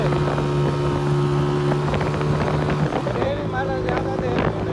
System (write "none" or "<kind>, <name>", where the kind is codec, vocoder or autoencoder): none